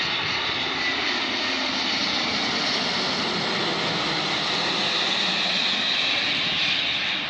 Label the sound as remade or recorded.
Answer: recorded